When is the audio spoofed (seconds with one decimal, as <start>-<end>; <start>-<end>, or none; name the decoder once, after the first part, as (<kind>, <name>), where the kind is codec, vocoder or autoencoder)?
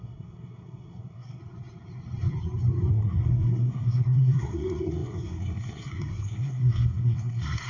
0.0-1.4 (codec, SNAC); 2.9-7.7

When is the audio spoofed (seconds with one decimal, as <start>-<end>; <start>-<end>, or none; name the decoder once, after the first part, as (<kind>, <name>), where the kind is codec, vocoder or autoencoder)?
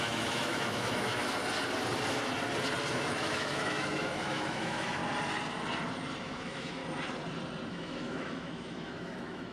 0.0-1.4 (autoencoder, DAC-VAE); 2.9-5.0; 6.2-6.8; 7.7-9.5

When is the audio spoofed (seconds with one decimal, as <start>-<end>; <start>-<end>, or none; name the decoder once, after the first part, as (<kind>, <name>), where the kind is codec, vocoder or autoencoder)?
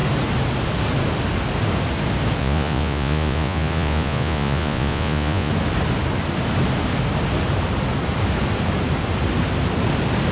2.4-5.5 (vocoder, Vocos)